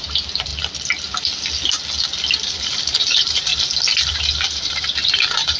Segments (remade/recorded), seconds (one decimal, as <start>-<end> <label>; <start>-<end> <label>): 0.0-0.5 remade; 0.5-2.5 recorded; 2.5-3.5 remade; 3.5-4.1 recorded; 4.1-5.6 remade